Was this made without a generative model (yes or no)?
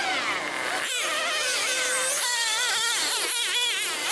yes